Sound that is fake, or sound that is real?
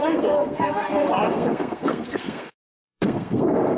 fake